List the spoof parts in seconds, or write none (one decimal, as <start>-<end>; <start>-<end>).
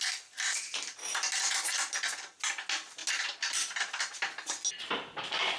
none